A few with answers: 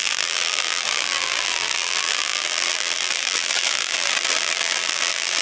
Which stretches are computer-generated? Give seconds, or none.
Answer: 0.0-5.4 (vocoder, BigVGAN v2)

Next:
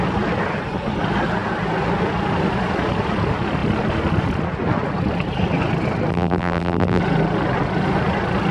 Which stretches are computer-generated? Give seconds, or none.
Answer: 6.1-7.0 (vocoder, BigVGAN v2)

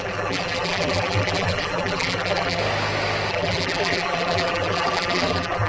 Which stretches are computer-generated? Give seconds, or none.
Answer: 0.0-2.6 (vocoder, BigVGAN v2); 3.3-5.7

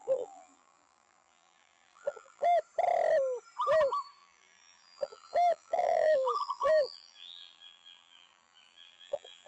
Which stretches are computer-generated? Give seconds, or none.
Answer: 0.0-2.6 (vocoder, BigVGAN v2); 4.2-9.5

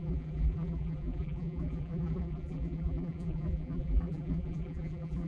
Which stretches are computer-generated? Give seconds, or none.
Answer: 0.0-5.3 (vocoder, BigVGAN v2)

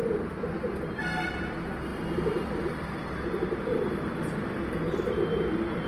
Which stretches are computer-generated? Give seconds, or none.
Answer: 1.9-4.1 (vocoder, BigVGAN v2)

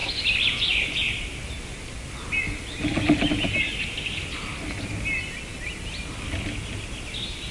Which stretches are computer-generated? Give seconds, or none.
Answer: none